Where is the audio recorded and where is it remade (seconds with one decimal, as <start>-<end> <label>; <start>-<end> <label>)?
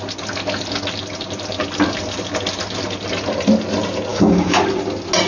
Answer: 0.0-4.1 recorded; 4.1-4.6 remade; 4.6-5.3 recorded